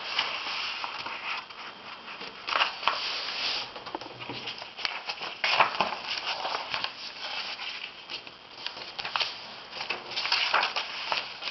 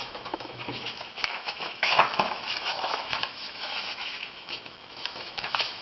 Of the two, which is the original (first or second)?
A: first